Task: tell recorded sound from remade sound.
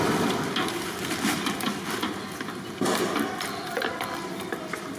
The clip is recorded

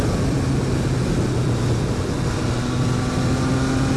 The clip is recorded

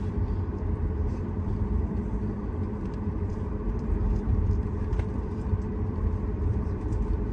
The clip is remade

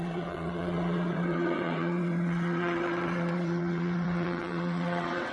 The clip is remade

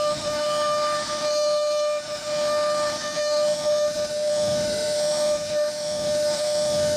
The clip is remade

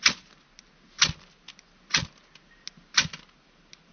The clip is recorded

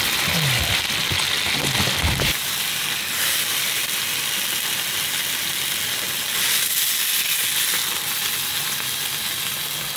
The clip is recorded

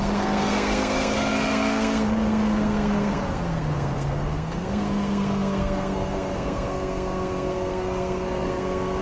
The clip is remade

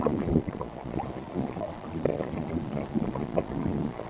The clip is remade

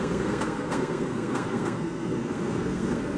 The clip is remade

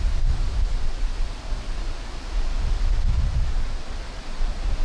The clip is recorded